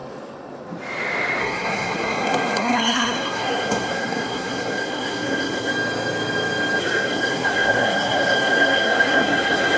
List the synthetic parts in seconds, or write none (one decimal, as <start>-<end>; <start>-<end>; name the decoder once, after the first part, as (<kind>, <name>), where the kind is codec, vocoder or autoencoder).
1.4-5.7 (codec, SNAC); 6.8-9.8